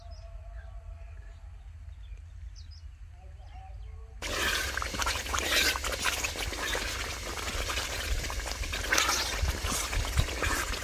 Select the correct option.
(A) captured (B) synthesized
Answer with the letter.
A